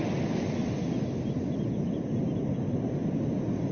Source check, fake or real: real